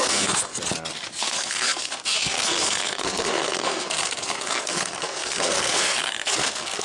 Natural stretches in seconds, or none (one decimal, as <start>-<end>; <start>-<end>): 0.5-1.2

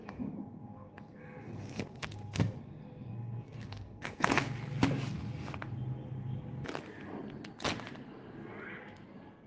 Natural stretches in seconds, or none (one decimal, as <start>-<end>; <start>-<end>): 4.3-9.5

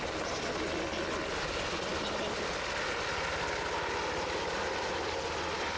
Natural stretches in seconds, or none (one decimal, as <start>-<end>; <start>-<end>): 0.0-5.8

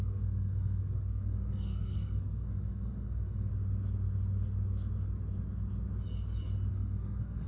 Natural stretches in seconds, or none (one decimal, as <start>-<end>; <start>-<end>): 3.5-6.7

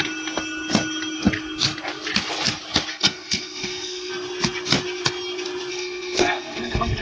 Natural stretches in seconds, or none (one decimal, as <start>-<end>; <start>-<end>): 0.0-2.9; 4.1-5.7